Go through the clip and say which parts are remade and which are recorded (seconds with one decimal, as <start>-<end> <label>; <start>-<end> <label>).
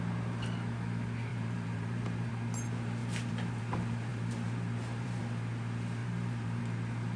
0.0-1.3 recorded; 1.3-2.3 remade; 2.3-3.0 recorded; 3.0-3.6 remade; 3.6-4.1 recorded; 4.1-5.2 remade; 5.2-6.0 recorded; 6.0-6.6 remade; 6.6-7.2 recorded